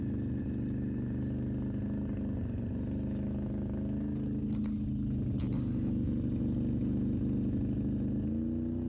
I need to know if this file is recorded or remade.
recorded